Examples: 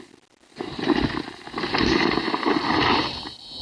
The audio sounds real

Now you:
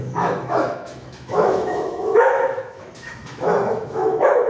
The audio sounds fake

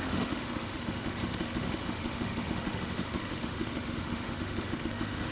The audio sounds fake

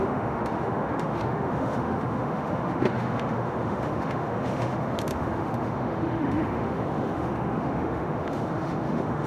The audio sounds fake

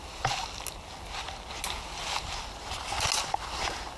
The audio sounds real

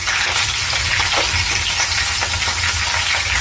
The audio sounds real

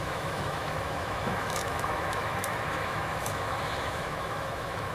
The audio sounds fake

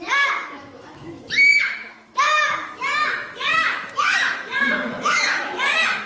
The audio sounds fake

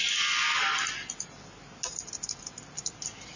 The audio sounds real